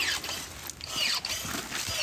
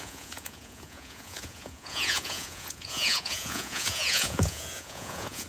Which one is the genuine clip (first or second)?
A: first